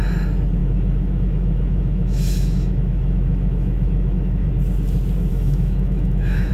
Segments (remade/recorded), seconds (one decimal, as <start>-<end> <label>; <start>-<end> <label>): 0.0-0.6 recorded; 0.6-4.5 remade; 4.5-5.3 recorded; 5.3-6.5 remade